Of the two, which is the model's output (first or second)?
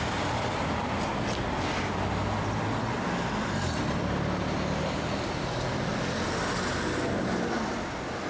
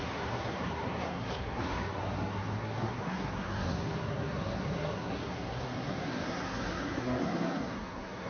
second